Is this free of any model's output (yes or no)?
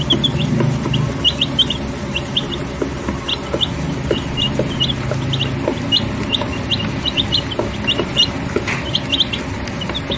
yes